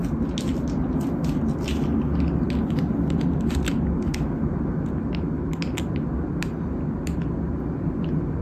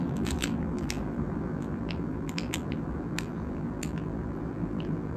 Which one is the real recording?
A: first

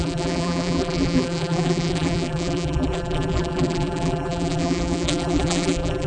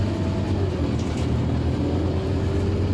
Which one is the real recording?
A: second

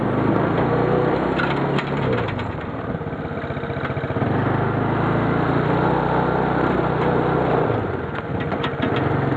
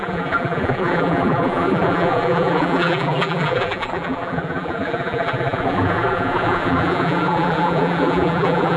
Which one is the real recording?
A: first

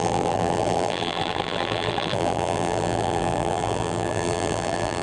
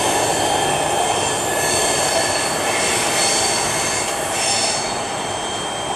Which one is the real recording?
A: second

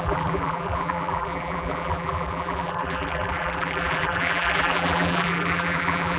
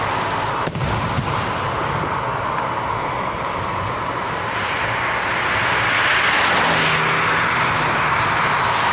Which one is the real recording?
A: second